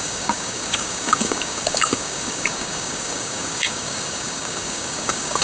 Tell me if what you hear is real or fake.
fake